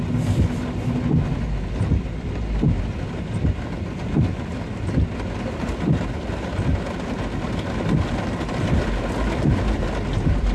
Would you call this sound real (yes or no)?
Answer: yes